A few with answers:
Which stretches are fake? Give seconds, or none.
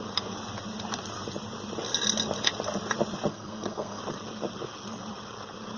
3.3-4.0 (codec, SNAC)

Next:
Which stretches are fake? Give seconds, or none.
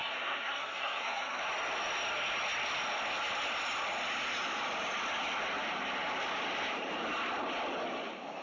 0.0-1.4 (codec, SNAC)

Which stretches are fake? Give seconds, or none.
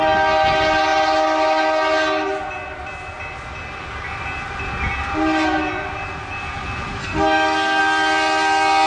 7.0-7.8 (codec, SNAC)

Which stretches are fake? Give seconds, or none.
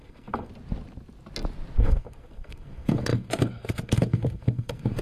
0.0-0.5 (codec, SNAC); 1.8-5.0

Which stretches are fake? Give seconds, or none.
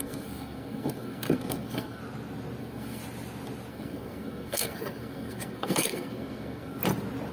0.0-2.0 (codec, SNAC); 2.6-3.0; 3.7-6.8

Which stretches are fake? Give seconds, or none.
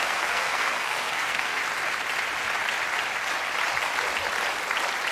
0.0-1.6 (codec, SNAC)